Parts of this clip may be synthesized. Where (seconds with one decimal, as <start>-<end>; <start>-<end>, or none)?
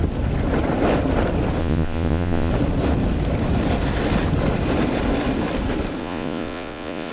1.6-2.5; 6.0-7.1